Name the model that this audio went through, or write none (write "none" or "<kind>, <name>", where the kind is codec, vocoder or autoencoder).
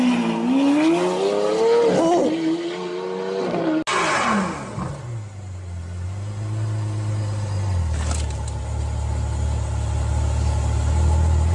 none